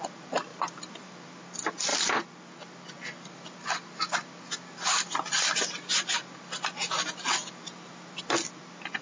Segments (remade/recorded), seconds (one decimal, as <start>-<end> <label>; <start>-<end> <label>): 0.0-0.5 recorded; 0.5-1.1 remade; 1.1-9.0 recorded